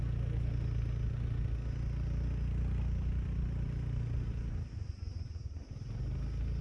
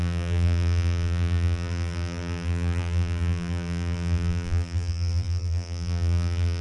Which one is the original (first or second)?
first